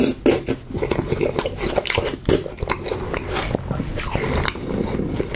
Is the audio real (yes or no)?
yes